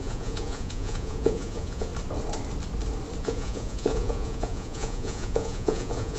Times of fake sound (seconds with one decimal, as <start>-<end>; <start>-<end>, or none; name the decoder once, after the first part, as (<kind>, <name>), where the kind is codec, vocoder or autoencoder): 0.0-1.9 (vocoder, Vocos); 3.2-6.2